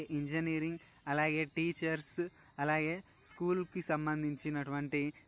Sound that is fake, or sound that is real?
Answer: real